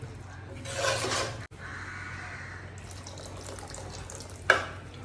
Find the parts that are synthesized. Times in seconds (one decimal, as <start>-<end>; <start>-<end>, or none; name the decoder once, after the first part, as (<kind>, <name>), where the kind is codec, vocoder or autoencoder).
none